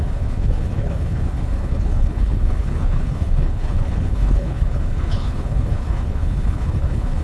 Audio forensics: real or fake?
fake